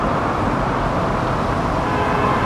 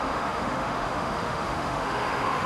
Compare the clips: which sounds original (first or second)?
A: first